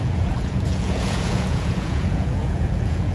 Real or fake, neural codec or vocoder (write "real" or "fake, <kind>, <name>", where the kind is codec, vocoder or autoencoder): fake, vocoder, Vocos